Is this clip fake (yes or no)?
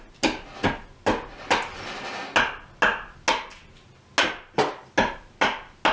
no